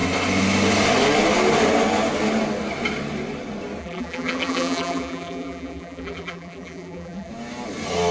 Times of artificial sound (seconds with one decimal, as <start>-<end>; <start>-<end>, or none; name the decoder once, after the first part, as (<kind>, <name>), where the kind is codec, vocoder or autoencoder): 3.8-7.3 (vocoder, BigVGAN v2)